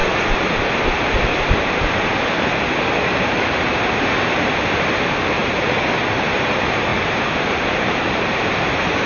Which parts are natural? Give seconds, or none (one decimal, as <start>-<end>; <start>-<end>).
none

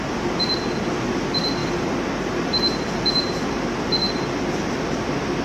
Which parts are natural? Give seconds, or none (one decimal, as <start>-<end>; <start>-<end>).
0.0-1.6; 2.7-5.4

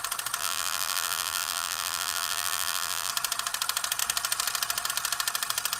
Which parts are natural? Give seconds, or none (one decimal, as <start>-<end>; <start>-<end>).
0.0-0.4; 3.1-5.8

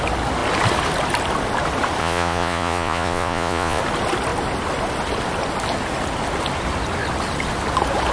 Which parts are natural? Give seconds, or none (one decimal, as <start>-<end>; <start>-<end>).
0.0-2.0; 3.8-8.1

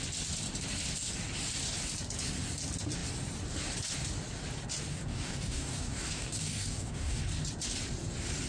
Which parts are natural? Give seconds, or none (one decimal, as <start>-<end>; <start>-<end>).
0.0-4.9; 7.2-8.5

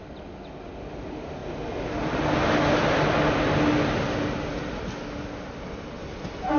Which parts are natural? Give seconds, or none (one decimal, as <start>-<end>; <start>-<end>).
0.0-6.6

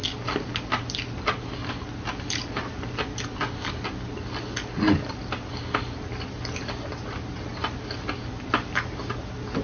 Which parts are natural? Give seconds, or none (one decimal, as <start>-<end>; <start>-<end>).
0.0-9.6

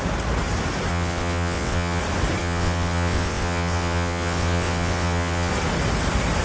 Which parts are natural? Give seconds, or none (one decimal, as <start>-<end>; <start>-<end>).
0.0-0.9; 2.0-2.4; 5.5-6.4